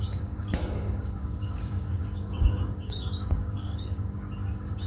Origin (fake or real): fake